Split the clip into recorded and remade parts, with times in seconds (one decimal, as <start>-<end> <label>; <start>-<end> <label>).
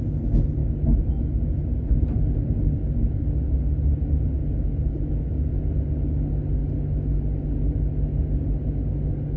0.0-0.6 recorded; 0.6-2.2 remade; 2.2-4.9 recorded; 4.9-5.6 remade; 5.6-9.4 recorded